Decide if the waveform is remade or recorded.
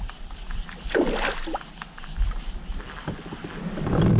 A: recorded